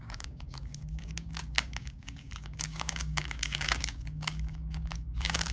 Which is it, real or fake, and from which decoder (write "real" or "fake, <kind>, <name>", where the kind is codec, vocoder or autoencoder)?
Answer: fake, codec, DAC